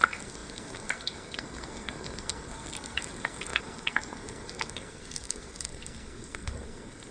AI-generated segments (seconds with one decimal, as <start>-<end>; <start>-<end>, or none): 0.0-7.1